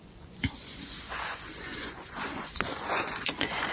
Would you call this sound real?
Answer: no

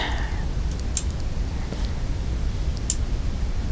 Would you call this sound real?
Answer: yes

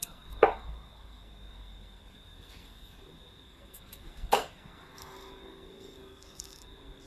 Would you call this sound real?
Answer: no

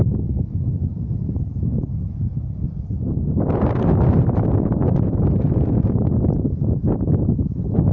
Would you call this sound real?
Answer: yes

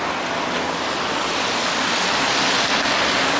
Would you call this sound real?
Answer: yes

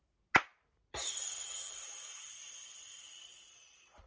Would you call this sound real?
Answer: yes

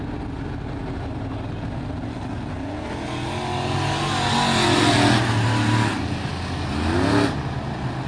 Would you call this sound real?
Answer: yes